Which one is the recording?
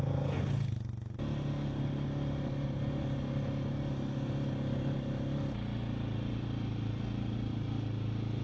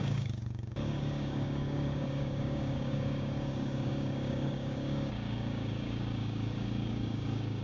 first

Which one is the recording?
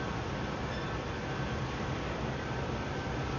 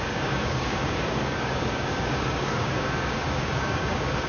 first